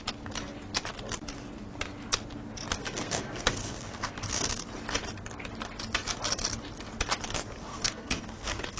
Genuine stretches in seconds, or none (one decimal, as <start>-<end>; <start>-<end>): 0.0-2.8; 4.6-7.7